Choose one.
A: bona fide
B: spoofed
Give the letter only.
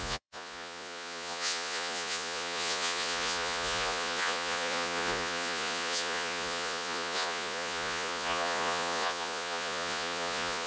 B